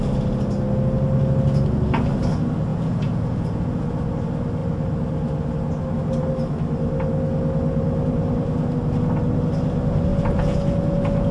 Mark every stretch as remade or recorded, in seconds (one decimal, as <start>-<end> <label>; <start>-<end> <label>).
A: 0.0-2.7 recorded; 2.7-3.9 remade; 3.9-10.1 recorded; 10.1-11.3 remade